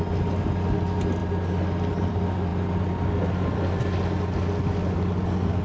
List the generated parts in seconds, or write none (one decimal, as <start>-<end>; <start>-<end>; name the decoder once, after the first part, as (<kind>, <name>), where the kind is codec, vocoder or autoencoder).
none